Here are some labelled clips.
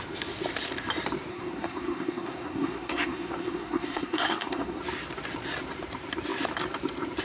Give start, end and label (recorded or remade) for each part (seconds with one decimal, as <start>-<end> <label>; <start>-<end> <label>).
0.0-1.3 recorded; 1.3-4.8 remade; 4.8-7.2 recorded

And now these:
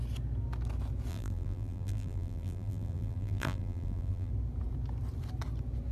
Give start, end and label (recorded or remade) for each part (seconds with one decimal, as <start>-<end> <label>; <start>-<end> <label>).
0.0-1.1 recorded; 1.1-4.3 remade; 4.3-5.9 recorded

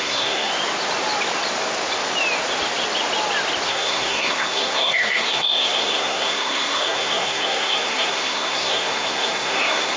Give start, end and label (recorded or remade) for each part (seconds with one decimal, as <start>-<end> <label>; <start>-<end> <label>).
0.0-0.5 remade; 0.5-3.7 recorded; 3.7-10.0 remade

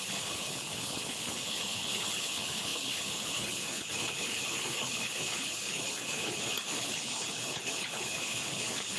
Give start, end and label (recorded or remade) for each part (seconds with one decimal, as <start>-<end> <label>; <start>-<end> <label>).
0.0-9.0 remade

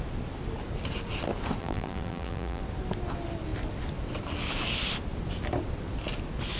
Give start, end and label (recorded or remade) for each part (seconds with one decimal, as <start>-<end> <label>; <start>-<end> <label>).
0.0-1.6 recorded; 1.6-2.6 remade; 2.6-6.6 recorded

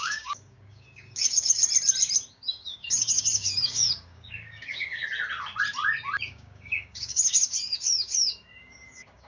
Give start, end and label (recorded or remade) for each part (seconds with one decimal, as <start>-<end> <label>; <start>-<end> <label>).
0.0-1.6 remade; 1.6-2.3 recorded; 2.3-5.0 remade; 5.0-6.3 recorded; 6.3-9.3 remade

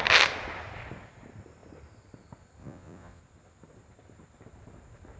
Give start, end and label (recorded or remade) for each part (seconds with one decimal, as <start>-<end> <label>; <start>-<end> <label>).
0.0-2.6 recorded; 2.6-3.2 remade; 3.2-5.2 recorded

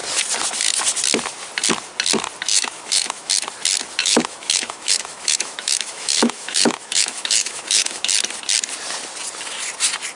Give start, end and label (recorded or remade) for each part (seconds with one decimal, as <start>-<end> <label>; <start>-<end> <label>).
0.0-2.5 recorded; 2.5-3.3 remade; 3.3-4.0 recorded; 4.0-8.1 remade; 8.1-10.2 recorded